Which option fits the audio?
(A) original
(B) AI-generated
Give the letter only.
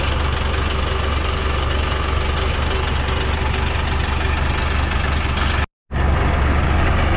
A